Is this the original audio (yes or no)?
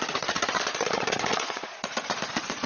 no